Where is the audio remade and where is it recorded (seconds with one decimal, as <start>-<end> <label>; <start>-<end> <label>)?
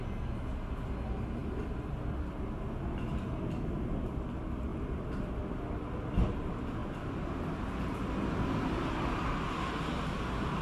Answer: 0.0-4.7 recorded; 4.7-5.3 remade; 5.3-10.6 recorded